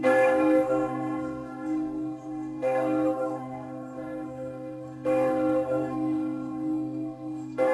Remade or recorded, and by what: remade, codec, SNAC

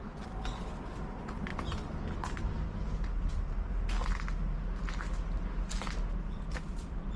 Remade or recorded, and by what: recorded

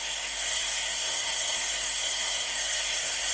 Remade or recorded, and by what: remade, codec, SNAC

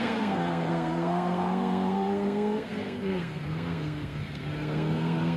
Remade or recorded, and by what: remade, codec, SNAC